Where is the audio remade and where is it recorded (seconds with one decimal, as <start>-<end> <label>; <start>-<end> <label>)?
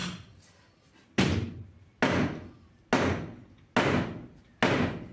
0.0-5.1 recorded